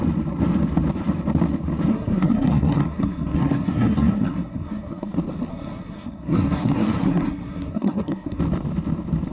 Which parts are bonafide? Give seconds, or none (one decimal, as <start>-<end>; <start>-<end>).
0.0-1.9; 5.1-5.5; 8.4-9.3